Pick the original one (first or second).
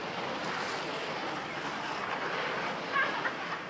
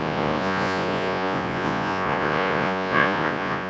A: first